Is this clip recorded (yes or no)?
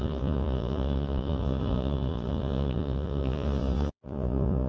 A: no